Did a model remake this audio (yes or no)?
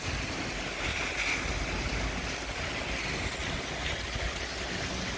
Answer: no